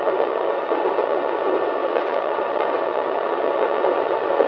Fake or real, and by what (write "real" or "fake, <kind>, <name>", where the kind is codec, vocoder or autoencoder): fake, vocoder, WaveNeXt